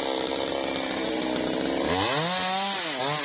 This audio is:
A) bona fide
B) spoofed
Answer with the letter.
A